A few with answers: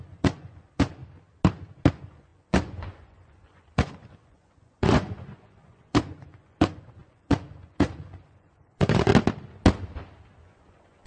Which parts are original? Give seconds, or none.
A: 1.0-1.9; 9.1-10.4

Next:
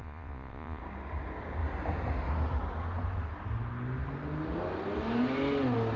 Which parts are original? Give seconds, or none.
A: 0.8-6.0

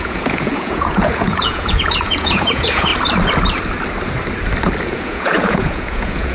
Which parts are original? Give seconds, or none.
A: 2.9-4.8

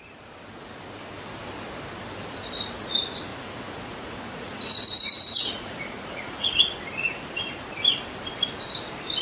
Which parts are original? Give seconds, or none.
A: 0.0-3.3; 6.6-9.2

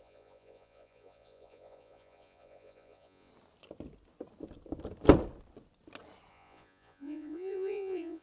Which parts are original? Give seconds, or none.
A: 3.3-6.3